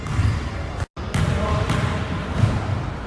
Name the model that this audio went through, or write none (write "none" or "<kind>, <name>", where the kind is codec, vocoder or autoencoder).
none